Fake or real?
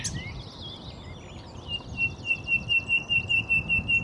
real